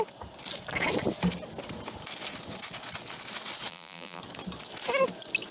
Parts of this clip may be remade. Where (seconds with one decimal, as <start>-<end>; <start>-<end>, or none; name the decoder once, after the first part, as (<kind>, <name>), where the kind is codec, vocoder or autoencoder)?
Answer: 3.7-4.2 (vocoder, BigVGAN v2)